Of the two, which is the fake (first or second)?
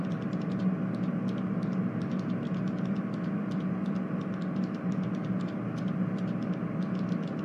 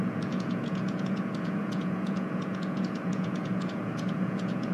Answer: second